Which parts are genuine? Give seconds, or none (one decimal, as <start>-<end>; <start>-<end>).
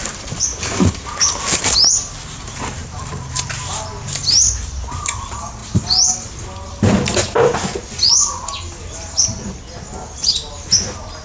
0.9-2.8; 3.5-11.2